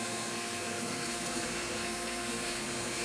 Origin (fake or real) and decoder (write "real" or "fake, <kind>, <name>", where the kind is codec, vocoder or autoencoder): fake, codec, SNAC